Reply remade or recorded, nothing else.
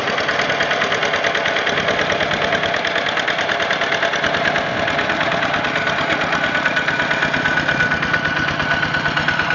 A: recorded